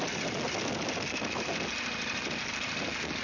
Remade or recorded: recorded